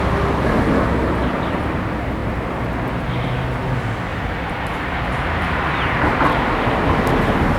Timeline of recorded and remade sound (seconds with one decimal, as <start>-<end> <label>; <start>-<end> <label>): 0.0-1.0 recorded; 1.0-1.8 remade; 1.8-2.2 recorded; 2.2-2.9 remade; 2.9-4.1 recorded; 4.1-6.6 remade; 6.6-7.6 recorded